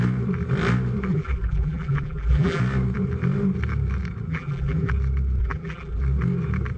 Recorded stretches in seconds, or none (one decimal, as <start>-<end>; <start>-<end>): 0.0-1.1; 2.6-4.3; 4.9-5.4; 6.0-6.8